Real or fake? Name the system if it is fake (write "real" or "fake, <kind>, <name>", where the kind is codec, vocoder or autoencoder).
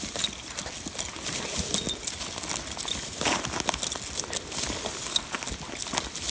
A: real